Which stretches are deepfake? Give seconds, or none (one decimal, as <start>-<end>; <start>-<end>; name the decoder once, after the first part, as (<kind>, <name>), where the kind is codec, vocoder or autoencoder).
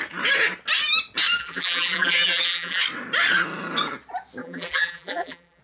1.4-2.8 (vocoder, BigVGAN v2); 4.4-5.6